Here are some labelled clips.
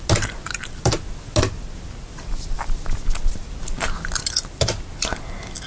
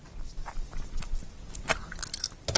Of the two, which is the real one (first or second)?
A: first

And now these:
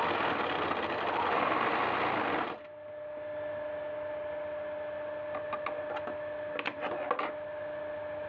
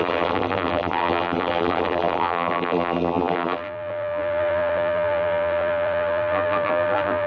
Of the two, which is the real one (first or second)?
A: first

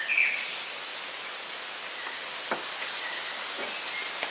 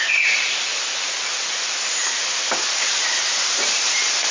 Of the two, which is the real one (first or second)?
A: first